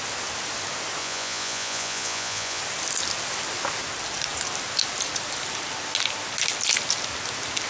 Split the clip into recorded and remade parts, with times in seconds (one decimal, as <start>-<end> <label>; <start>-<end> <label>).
0.0-1.0 recorded; 1.0-2.6 remade; 2.6-7.7 recorded